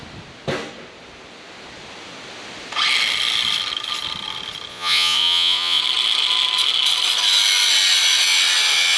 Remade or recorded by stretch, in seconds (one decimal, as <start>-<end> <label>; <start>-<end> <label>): 0.0-4.7 recorded; 4.7-5.8 remade; 5.8-9.0 recorded